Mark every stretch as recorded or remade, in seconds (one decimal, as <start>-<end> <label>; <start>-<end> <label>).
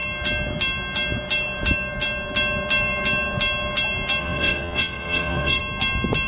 0.0-4.2 recorded; 4.2-5.6 remade; 5.6-6.3 recorded